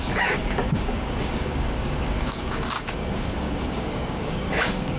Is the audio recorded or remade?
remade